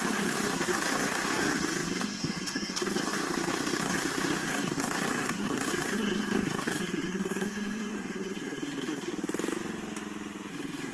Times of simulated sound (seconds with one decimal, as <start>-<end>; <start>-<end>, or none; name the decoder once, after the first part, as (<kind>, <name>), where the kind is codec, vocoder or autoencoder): 0.0-9.1 (codec, SNAC); 10.5-10.9

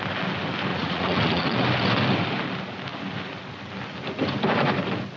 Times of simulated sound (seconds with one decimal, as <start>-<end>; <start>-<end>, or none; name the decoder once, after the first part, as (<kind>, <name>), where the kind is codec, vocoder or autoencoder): 0.7-1.6 (vocoder, Vocos)